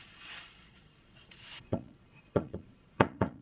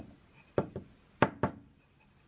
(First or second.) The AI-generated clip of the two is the first